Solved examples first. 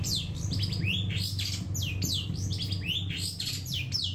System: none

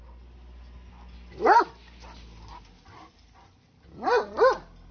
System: none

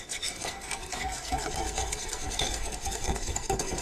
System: codec, SNAC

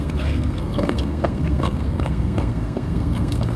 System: codec, SNAC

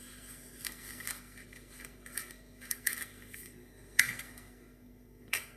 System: codec, SNAC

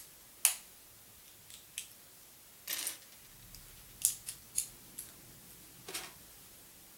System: none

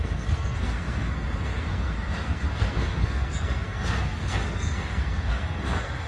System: codec, SNAC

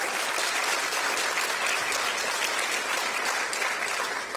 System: none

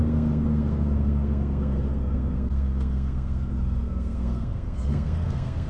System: codec, SNAC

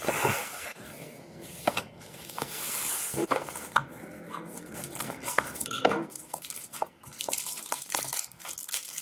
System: codec, SNAC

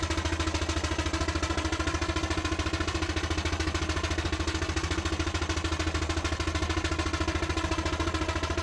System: none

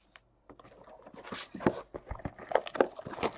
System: none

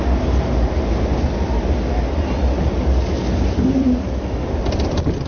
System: none